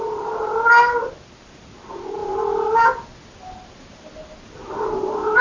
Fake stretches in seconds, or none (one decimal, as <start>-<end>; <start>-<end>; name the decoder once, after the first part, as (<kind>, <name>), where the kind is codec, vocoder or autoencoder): none